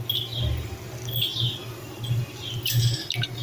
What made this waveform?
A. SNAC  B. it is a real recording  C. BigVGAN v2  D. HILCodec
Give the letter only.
B